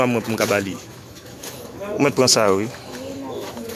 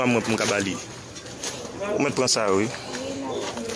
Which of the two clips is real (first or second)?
second